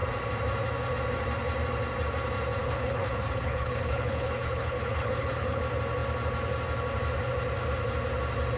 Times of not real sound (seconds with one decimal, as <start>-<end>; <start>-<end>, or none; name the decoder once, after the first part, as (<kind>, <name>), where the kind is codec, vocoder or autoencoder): 2.6-5.6 (codec, HILCodec)